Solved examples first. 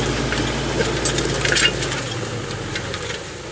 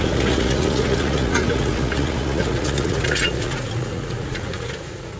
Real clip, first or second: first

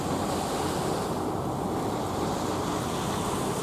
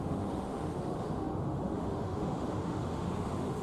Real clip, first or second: first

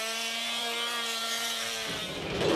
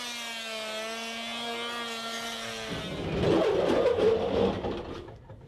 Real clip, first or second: second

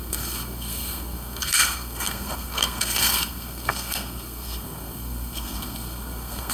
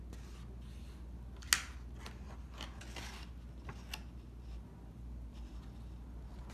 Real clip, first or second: second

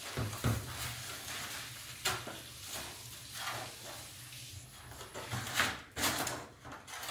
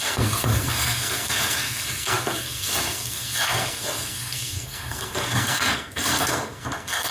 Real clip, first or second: first